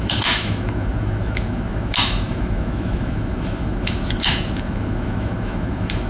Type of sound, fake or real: fake